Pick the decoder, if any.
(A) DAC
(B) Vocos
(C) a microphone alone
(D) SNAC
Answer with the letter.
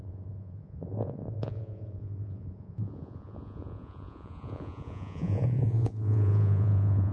B